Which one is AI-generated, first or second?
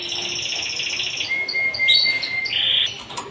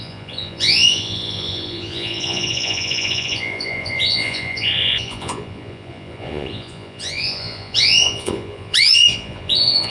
second